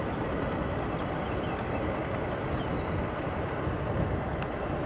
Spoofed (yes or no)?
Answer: no